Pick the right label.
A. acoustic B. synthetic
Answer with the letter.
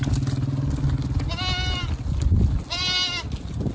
A